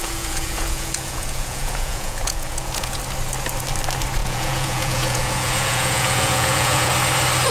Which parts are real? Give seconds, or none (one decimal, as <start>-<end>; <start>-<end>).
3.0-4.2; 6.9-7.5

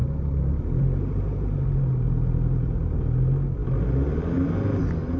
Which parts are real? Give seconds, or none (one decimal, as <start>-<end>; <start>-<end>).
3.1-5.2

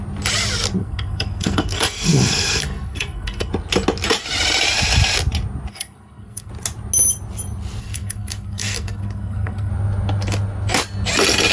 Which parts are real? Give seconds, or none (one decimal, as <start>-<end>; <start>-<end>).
0.0-0.8; 3.5-5.7; 6.5-7.8; 9.7-11.5

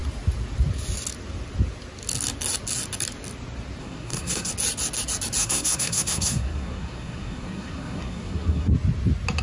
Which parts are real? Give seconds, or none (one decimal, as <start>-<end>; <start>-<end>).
0.0-3.8; 4.5-5.4; 8.7-9.4

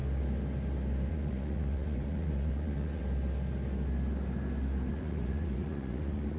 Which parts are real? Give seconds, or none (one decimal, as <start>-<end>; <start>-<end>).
0.0-1.1; 3.0-4.9